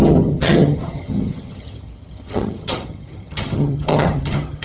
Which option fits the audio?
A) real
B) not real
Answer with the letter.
B